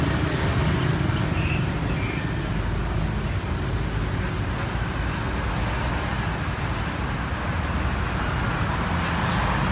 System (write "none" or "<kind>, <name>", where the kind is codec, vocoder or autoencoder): none